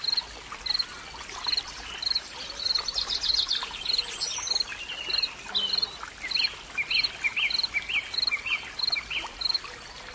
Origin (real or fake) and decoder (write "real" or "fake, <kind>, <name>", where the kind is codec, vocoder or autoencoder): real